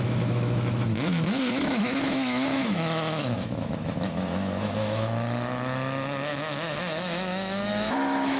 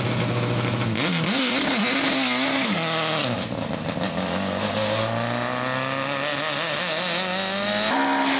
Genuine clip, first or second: second